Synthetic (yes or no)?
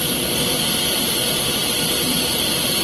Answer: no